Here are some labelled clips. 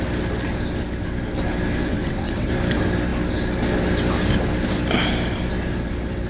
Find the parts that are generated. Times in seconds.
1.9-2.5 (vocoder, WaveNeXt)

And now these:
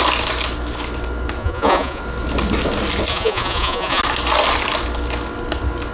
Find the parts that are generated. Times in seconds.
1.4-2.0 (vocoder, Vocos); 3.1-4.0

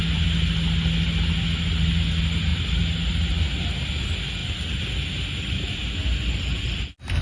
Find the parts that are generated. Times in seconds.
none

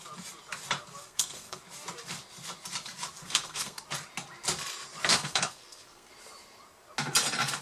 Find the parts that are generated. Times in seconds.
1.0-1.6 (codec, SNAC); 3.2-3.8; 5.1-6.1

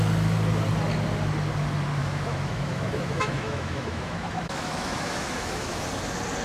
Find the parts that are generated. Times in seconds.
2.0-5.8 (autoencoder, DAC-VAE)

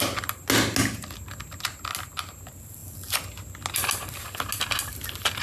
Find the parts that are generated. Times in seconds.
none

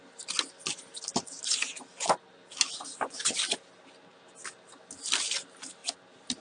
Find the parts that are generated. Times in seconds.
none